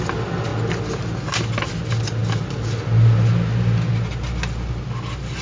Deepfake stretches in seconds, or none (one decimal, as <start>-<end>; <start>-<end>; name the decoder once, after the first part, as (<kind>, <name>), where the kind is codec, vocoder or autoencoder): none